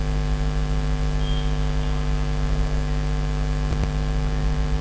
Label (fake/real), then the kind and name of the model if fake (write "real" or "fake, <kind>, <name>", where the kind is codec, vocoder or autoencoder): real